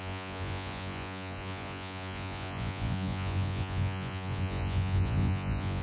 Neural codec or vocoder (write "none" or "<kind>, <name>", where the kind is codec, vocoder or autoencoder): vocoder, Vocos